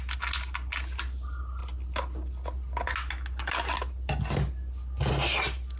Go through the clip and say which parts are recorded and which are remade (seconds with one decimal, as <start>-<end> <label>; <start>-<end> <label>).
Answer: 0.0-5.8 recorded